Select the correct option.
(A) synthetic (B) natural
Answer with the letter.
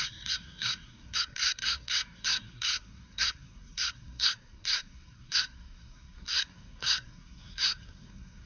A